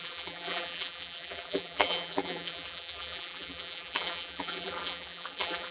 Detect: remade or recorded remade